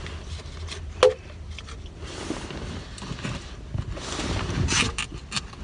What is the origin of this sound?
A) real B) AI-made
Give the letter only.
A